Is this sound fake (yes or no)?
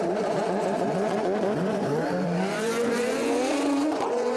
yes